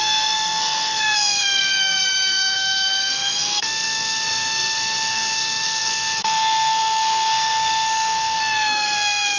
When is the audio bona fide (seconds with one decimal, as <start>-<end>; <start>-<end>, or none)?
none